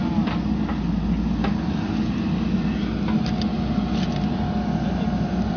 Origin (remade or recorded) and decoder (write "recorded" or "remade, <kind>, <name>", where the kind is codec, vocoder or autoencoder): recorded